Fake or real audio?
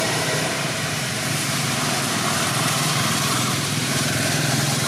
fake